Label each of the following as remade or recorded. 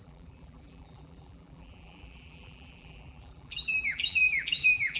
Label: remade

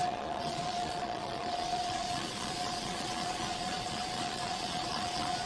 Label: remade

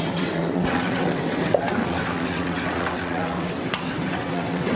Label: remade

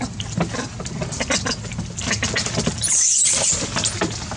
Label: recorded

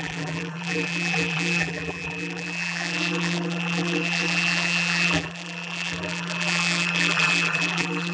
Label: remade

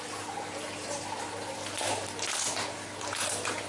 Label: recorded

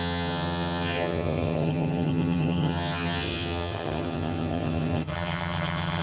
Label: remade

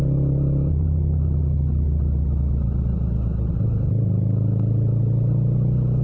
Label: recorded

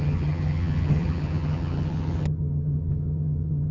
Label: remade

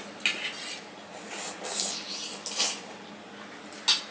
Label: recorded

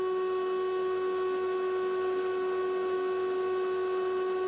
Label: recorded